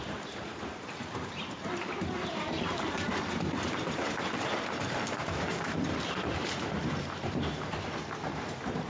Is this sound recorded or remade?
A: remade